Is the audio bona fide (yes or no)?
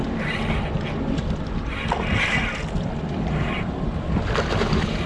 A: yes